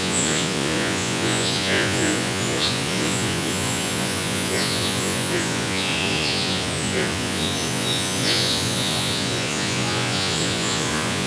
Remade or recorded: remade